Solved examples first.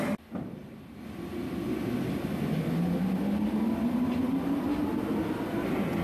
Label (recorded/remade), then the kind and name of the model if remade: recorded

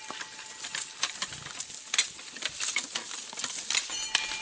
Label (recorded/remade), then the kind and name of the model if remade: recorded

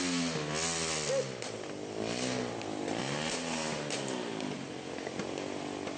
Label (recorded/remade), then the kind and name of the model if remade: recorded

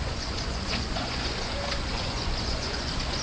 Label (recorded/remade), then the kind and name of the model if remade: remade, vocoder, Vocos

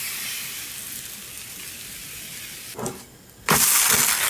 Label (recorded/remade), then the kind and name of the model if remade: recorded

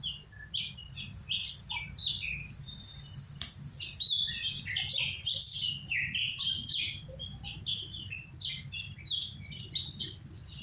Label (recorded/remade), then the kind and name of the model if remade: recorded